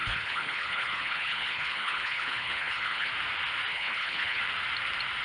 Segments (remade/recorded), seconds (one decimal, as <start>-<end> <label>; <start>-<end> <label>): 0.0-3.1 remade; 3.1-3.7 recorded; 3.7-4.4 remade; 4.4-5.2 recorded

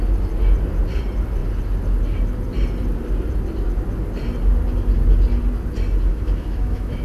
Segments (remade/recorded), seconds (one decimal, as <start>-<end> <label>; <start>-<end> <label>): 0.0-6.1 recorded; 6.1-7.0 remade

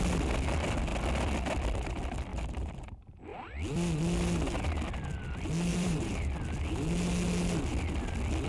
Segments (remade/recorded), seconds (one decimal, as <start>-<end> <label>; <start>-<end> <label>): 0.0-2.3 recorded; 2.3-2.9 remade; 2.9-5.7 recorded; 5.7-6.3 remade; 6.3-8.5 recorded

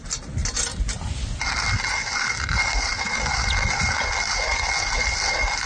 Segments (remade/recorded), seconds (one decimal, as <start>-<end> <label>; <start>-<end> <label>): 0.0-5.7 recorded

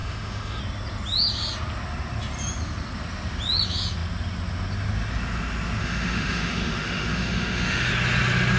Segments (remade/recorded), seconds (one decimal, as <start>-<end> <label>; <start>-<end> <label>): 0.0-0.6 remade; 0.6-5.8 recorded; 5.8-7.9 remade; 7.9-8.6 recorded

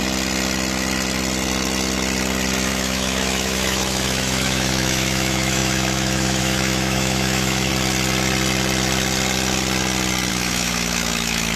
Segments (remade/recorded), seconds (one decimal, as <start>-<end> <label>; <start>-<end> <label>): 0.0-2.7 recorded; 2.7-7.7 remade; 7.7-10.3 recorded; 10.3-11.6 remade

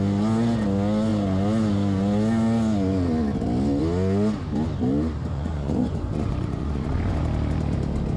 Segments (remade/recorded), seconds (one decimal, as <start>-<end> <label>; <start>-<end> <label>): 0.0-5.3 recorded; 5.3-7.2 remade; 7.2-8.2 recorded

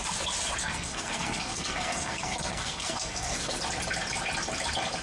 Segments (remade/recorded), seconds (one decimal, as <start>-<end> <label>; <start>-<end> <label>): 0.0-0.6 recorded; 0.6-3.6 remade; 3.6-5.0 recorded